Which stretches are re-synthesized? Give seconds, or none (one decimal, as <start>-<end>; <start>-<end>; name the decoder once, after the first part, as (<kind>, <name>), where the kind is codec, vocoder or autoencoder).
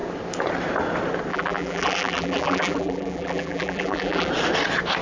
1.3-4.3 (vocoder, BigVGAN v2)